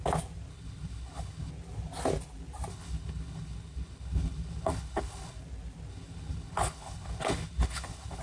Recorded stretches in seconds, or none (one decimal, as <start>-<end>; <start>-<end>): 0.0-0.5; 1.5-2.7; 5.4-5.9